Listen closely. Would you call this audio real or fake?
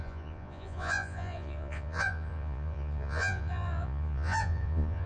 fake